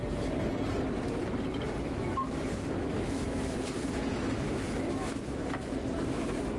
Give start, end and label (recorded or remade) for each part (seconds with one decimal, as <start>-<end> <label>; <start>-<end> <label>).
0.0-1.8 recorded; 1.8-5.8 remade; 5.8-6.6 recorded